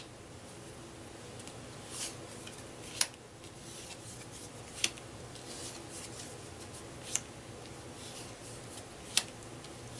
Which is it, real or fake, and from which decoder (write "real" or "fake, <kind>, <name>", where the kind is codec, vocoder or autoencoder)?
real